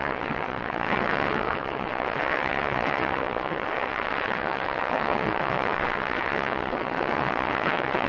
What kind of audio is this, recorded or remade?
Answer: remade